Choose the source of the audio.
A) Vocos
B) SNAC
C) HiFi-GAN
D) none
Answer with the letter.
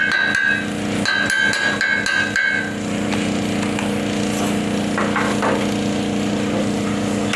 D